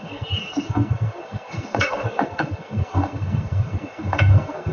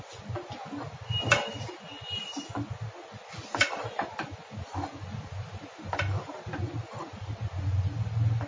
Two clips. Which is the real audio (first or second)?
second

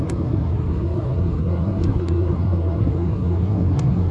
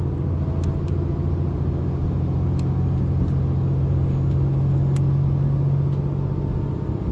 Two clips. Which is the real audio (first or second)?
second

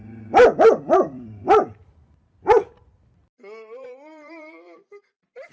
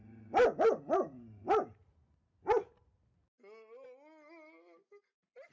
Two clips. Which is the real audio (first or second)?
second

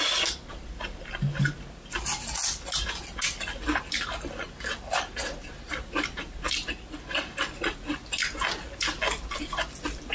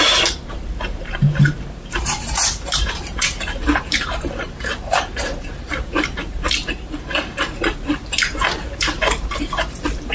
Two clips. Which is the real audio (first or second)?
first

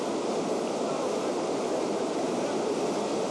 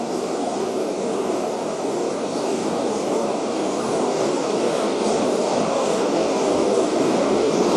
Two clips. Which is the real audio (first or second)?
first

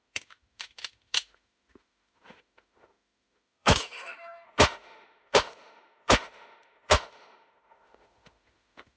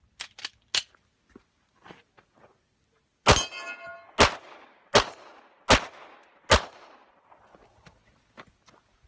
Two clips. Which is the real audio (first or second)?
second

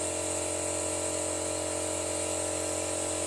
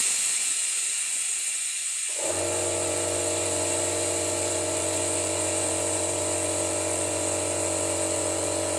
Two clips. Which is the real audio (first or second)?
first